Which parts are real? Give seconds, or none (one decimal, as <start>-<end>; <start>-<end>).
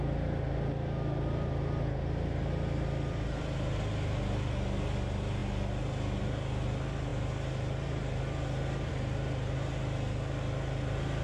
0.0-11.2